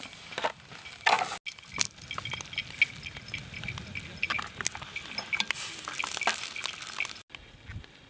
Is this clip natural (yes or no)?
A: yes